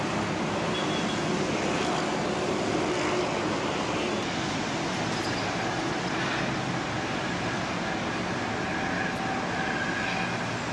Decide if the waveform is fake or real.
real